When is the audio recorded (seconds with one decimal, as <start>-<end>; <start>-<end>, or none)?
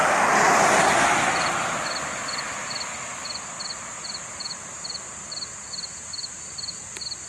0.6-3.1; 5.7-7.3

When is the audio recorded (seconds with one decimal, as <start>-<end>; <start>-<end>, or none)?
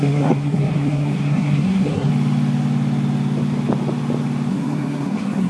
2.1-4.5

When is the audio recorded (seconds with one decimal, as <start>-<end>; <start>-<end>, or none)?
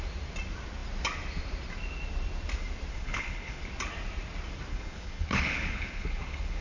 0.0-2.9; 3.6-4.7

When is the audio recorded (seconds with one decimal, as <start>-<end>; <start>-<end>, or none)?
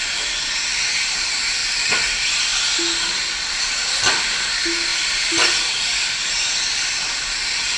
0.0-4.9; 6.8-7.8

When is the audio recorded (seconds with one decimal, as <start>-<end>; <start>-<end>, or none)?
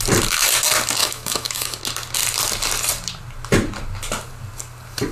0.0-1.0; 1.8-5.1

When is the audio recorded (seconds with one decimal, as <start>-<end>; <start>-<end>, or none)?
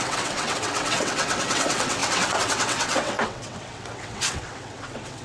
none